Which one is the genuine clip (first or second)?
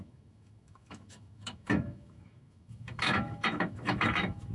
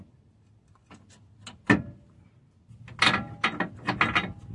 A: second